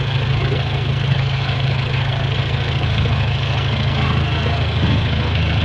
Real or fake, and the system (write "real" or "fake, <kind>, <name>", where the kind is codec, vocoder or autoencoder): fake, codec, SNAC